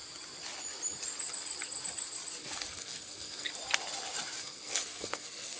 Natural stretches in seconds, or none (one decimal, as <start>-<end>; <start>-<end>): 0.0-2.4; 3.5-4.4